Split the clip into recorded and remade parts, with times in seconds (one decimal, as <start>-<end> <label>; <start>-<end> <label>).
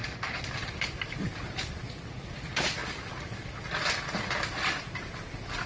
0.0-5.7 recorded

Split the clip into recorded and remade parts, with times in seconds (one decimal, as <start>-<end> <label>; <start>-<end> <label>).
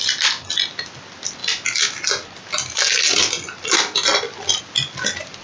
0.0-5.4 recorded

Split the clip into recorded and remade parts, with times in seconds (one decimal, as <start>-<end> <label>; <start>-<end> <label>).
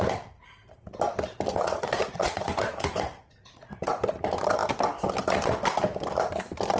0.0-1.5 recorded; 1.5-3.9 remade; 3.9-6.8 recorded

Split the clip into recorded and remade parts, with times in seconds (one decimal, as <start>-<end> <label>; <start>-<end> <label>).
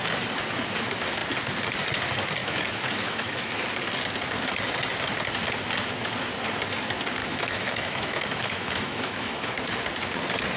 0.0-2.4 recorded; 2.4-3.5 remade; 3.5-7.2 recorded; 7.2-9.5 remade; 9.5-10.6 recorded